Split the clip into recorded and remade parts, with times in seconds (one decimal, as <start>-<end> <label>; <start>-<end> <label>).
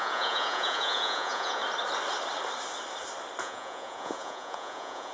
0.0-1.6 remade; 1.6-3.4 recorded; 3.4-5.1 remade